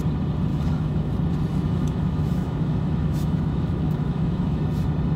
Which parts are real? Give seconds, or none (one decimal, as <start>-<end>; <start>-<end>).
0.0-0.5; 1.1-1.5; 4.6-5.2